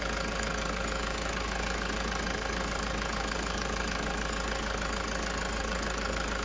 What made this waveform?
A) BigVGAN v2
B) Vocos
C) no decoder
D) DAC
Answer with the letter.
D